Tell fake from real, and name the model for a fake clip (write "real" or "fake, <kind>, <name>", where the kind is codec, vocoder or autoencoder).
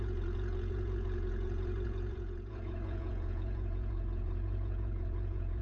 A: fake, vocoder, Vocos